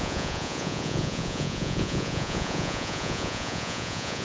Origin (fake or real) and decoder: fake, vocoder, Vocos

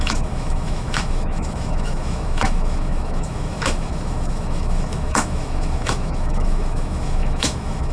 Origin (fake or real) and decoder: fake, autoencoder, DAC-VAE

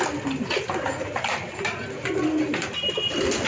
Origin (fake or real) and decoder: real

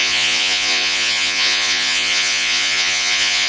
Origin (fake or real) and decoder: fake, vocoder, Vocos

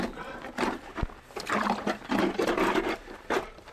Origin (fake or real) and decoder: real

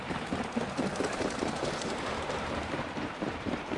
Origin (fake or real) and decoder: fake, vocoder, BigVGAN v2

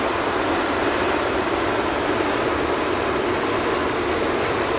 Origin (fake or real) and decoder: real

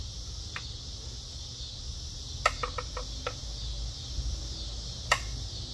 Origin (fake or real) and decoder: real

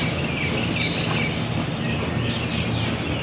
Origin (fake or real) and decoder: real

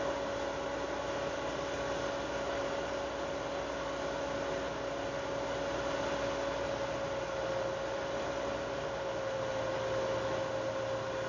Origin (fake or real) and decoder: real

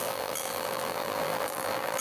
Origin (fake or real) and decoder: fake, vocoder, BigVGAN v2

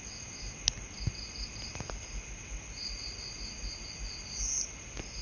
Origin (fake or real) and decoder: real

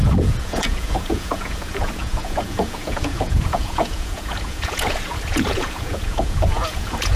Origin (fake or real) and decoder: fake, vocoder, Vocos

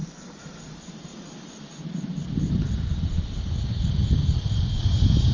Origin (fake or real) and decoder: real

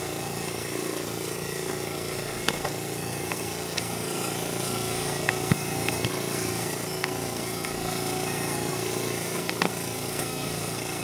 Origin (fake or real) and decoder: fake, codec, SNAC